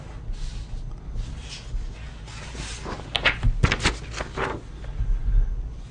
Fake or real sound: real